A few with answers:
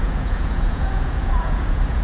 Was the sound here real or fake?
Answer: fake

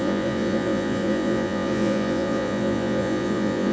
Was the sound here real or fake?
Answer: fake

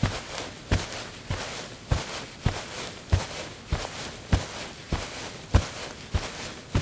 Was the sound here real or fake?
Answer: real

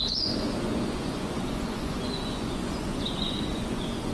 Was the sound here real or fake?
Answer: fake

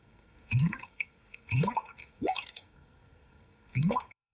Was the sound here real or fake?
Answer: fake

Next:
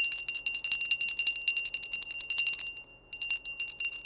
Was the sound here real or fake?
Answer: real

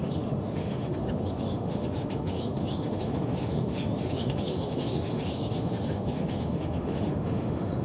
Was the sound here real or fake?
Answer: fake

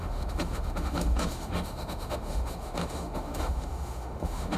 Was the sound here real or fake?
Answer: fake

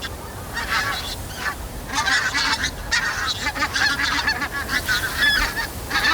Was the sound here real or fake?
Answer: real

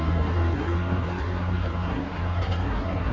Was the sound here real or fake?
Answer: fake